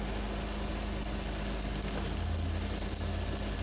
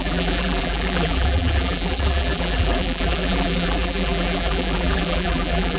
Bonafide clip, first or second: first